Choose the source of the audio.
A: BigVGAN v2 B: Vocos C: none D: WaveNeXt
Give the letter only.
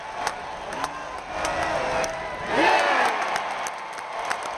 C